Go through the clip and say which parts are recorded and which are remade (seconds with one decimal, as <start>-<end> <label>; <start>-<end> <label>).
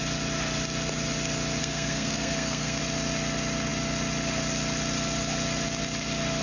0.0-1.6 recorded; 1.6-2.8 remade; 2.8-6.4 recorded